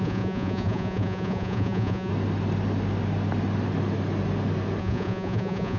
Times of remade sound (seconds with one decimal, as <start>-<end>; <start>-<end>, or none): 0.0-2.1; 4.8-5.8